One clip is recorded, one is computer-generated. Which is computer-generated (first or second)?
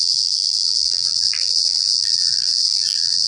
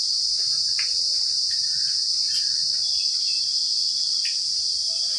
first